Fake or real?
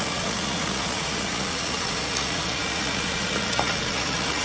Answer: fake